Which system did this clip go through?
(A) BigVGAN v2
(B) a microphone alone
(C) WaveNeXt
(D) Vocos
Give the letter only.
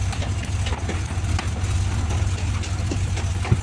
B